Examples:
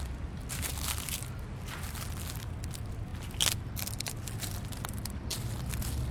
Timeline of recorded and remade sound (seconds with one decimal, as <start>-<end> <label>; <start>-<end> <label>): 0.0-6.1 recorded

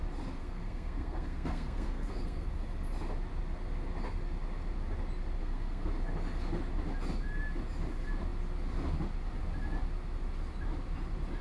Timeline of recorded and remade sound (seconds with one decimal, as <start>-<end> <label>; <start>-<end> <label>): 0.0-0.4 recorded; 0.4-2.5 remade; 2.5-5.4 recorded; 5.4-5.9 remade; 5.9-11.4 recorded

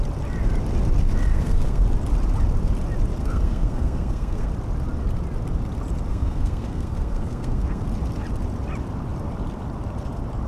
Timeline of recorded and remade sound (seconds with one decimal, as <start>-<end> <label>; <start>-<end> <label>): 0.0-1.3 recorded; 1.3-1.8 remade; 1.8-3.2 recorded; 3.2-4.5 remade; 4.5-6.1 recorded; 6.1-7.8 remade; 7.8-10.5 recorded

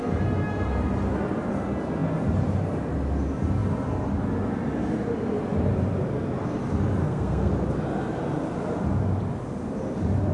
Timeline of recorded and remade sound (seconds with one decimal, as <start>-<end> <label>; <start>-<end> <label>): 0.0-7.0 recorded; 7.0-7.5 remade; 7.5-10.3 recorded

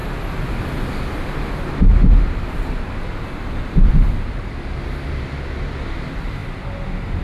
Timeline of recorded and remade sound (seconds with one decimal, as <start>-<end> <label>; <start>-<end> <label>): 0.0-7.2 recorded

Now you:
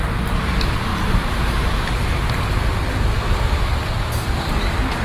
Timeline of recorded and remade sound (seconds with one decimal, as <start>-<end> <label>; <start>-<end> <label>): 0.0-5.0 recorded

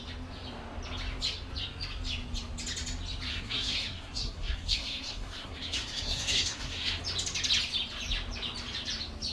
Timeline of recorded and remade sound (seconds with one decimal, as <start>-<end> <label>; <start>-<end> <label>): 0.0-3.3 recorded; 3.3-7.0 remade; 7.0-9.3 recorded

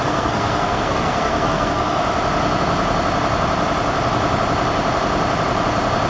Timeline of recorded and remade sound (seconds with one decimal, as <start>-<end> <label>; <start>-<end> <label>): 0.0-2.0 remade; 2.0-6.1 recorded